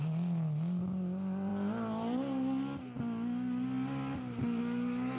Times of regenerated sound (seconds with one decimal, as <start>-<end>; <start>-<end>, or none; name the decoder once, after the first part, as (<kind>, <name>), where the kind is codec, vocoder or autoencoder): none